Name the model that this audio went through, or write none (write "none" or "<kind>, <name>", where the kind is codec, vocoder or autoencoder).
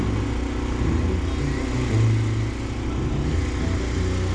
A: none